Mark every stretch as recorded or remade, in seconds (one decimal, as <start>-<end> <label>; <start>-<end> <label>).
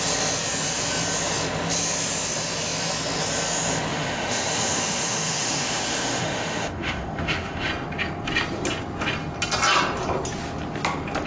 0.0-3.9 recorded; 3.9-7.7 remade; 7.7-11.3 recorded